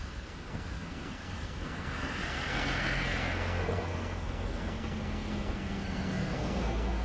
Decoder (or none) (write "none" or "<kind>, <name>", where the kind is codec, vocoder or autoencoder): codec, SNAC